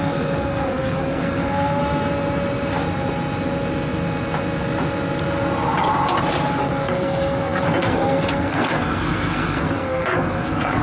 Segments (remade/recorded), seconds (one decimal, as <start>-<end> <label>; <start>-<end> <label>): 0.0-1.8 remade; 1.8-6.6 recorded; 6.6-10.8 remade